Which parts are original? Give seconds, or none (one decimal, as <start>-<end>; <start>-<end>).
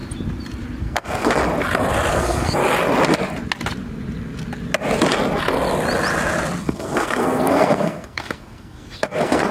0.0-0.8; 1.4-2.1; 2.6-6.6